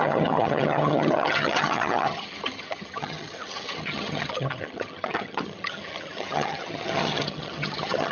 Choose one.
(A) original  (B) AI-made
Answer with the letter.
B